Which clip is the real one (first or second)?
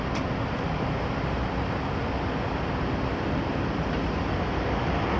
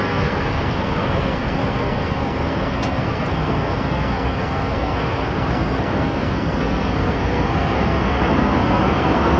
first